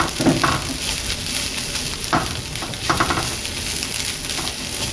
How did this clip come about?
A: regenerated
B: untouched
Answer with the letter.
B